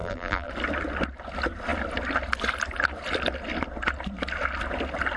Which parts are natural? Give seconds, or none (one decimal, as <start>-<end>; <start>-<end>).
0.5-5.2